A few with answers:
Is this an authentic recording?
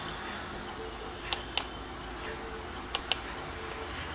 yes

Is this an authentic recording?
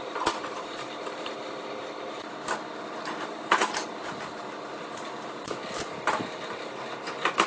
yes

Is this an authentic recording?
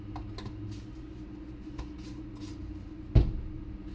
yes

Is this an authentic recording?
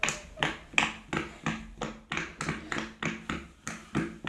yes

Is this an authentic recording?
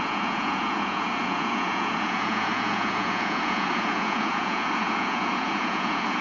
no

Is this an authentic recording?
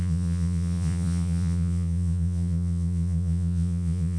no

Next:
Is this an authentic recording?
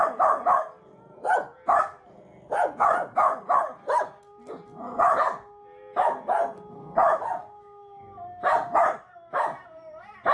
yes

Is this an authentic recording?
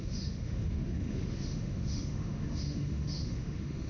no